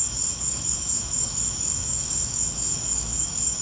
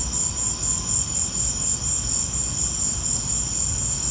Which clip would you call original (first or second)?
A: second